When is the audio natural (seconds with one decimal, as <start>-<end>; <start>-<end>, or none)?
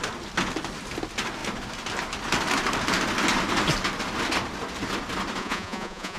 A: 0.0-5.4